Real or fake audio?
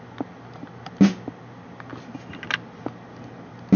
real